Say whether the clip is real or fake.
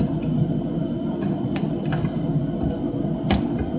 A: fake